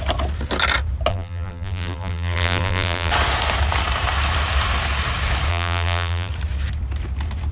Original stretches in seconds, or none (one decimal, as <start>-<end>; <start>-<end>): 0.0-1.1; 3.1-5.5; 6.3-7.5